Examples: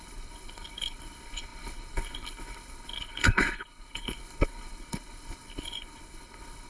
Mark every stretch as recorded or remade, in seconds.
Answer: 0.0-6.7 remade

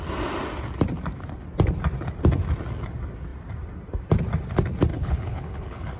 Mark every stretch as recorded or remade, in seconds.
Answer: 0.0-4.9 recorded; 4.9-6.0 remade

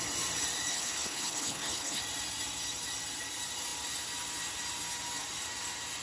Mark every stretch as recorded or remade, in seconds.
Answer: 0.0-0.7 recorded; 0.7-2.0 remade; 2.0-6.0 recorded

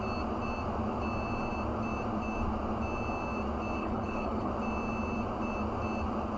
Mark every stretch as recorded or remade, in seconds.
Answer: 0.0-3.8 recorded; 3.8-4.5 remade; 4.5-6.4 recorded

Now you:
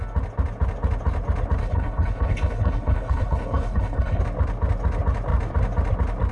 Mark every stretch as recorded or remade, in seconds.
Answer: 0.0-1.6 recorded; 1.6-4.2 remade; 4.2-6.3 recorded

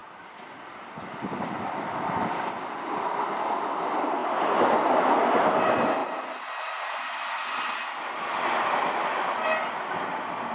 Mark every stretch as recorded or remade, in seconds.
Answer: 0.0-10.5 recorded